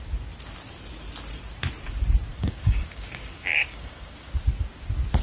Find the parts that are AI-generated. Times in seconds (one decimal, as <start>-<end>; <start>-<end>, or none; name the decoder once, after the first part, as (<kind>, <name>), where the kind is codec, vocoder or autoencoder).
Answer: 2.3-4.3 (codec, DAC)